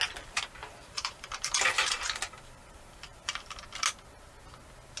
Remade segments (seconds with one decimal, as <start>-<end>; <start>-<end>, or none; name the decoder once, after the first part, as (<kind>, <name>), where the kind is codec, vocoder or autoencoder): 0.6-3.6 (vocoder, BigVGAN v2)